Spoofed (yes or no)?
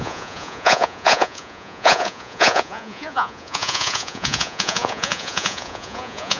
yes